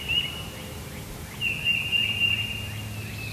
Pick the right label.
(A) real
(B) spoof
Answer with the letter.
A